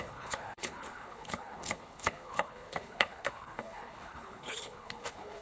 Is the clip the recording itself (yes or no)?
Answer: no